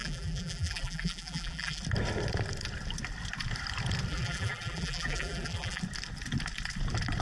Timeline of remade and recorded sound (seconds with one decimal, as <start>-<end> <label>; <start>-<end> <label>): 0.0-1.8 remade; 1.8-4.1 recorded; 4.1-5.8 remade; 5.8-7.2 recorded